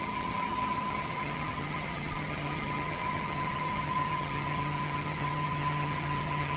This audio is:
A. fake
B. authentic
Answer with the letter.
A